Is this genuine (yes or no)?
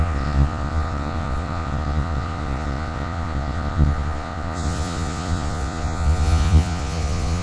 no